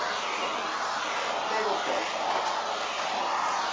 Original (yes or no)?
yes